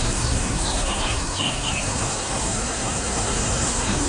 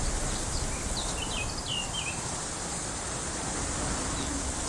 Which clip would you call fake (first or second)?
first